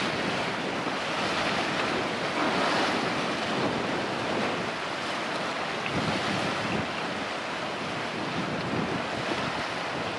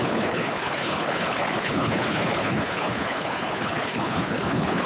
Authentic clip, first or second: first